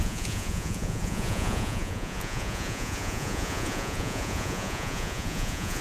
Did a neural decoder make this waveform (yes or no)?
yes